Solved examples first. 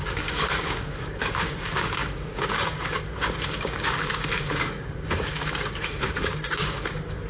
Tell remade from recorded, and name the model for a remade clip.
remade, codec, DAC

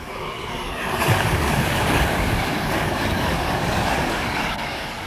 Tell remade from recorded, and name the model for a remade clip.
remade, codec, DAC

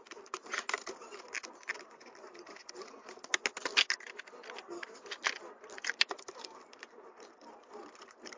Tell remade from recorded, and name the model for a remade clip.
recorded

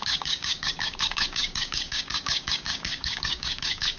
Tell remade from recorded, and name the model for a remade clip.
remade, codec, DAC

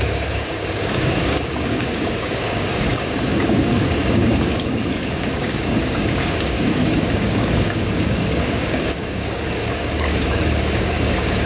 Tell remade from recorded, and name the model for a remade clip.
remade, codec, DAC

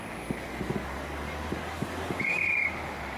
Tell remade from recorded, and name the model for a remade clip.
remade, codec, DAC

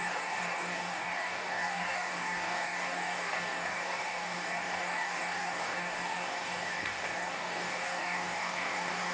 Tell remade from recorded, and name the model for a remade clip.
remade, codec, DAC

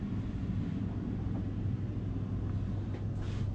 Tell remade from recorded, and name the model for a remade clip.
recorded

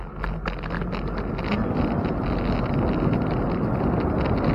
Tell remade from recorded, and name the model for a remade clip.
recorded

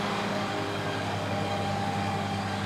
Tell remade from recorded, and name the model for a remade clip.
remade, codec, DAC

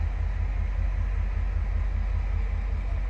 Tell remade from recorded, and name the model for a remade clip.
recorded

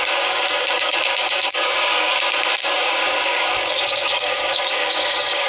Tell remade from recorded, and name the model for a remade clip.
remade, codec, DAC